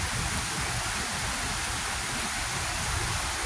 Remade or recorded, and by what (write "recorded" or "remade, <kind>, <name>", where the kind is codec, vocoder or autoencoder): recorded